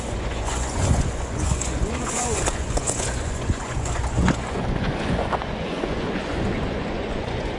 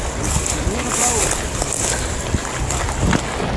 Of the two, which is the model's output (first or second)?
first